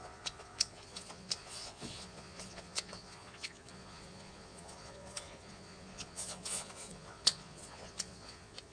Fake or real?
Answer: fake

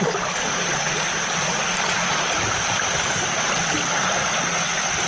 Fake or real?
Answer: real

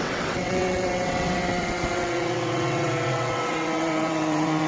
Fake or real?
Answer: fake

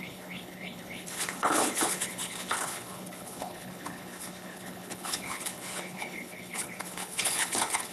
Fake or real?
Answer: fake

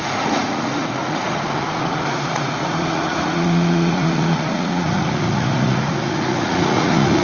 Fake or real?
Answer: fake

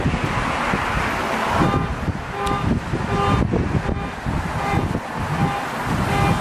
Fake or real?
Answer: real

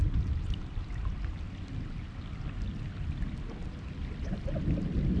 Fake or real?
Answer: real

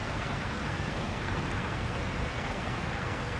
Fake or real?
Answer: fake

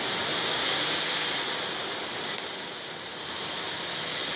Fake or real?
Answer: real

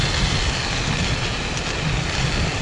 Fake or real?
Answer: real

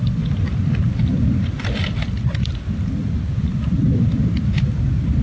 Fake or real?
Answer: real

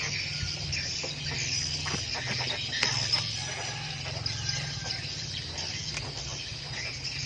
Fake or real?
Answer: real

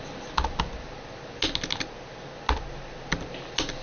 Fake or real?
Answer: real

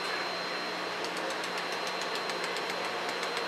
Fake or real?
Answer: real